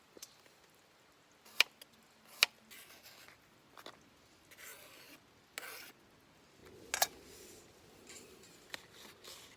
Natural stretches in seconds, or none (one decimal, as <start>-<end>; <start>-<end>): 0.0-9.6